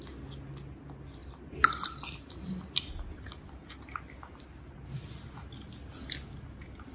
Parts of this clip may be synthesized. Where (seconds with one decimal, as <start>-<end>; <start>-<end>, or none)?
none